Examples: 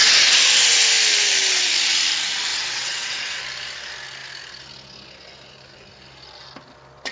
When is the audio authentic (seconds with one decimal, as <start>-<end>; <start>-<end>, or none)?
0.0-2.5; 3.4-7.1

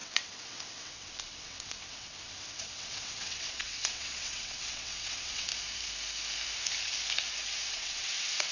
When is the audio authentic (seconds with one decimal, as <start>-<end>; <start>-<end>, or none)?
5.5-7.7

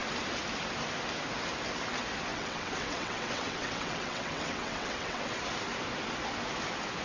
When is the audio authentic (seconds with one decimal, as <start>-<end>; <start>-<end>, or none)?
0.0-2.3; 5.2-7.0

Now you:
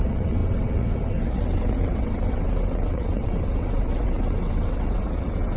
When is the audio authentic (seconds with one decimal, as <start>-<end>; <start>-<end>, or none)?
none

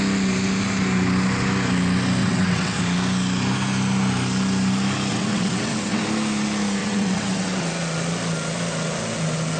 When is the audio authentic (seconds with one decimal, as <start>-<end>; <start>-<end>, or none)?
0.0-2.2; 2.8-5.1; 6.0-6.8; 7.7-9.6